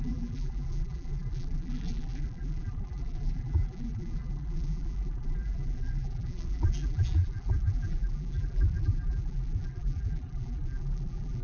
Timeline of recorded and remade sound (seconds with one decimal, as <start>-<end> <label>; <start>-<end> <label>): 0.0-11.4 remade